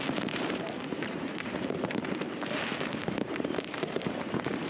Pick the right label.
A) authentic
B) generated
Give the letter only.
B